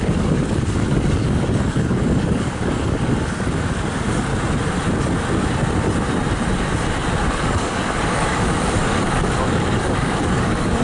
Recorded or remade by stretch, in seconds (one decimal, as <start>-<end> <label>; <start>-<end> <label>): 0.0-4.3 remade; 4.3-7.3 recorded; 7.3-10.8 remade